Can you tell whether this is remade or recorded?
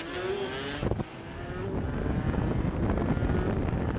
recorded